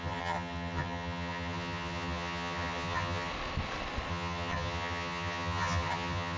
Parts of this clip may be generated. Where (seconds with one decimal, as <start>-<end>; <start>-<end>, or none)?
0.0-3.3; 4.1-6.4